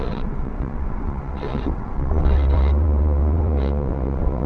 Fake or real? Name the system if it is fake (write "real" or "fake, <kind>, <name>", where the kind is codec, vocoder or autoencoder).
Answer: fake, vocoder, WaveNeXt